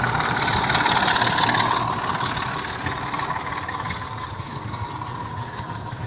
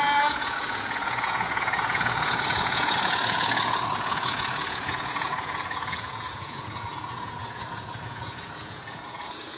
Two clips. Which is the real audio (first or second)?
first